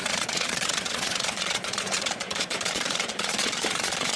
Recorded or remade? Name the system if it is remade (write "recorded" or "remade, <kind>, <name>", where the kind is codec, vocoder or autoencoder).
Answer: remade, vocoder, Vocos